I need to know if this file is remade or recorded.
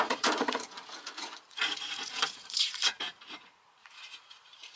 remade